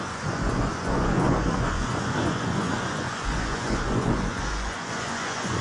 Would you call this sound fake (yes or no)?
yes